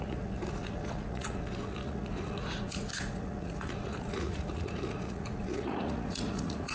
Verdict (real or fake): fake